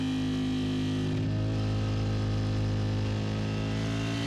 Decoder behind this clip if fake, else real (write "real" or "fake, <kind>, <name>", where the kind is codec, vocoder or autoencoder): real